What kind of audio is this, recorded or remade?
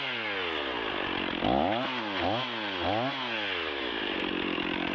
recorded